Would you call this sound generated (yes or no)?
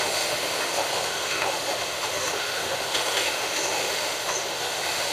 yes